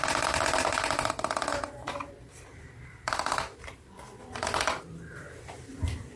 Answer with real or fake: fake